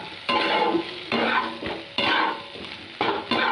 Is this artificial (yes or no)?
no